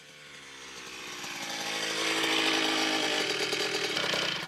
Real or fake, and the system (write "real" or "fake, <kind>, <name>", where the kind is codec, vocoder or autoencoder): real